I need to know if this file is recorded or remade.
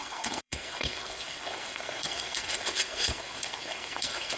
remade